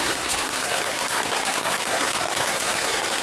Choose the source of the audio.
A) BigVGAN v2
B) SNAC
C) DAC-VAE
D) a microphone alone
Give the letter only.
B